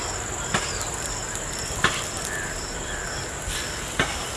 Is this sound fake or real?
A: real